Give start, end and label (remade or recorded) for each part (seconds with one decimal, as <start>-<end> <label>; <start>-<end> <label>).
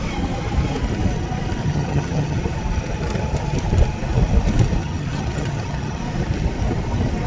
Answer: 0.0-1.6 recorded; 1.6-2.4 remade; 2.4-4.8 recorded; 4.8-6.0 remade; 6.0-7.3 recorded